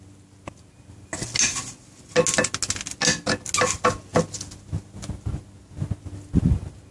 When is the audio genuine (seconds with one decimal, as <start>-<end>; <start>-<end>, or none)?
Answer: 0.0-6.9